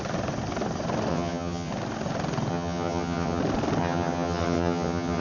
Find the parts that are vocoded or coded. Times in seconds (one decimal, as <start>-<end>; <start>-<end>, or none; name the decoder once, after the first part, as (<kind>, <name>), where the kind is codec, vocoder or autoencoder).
1.1-1.7 (vocoder, HiFi-GAN); 2.5-3.4; 3.8-5.2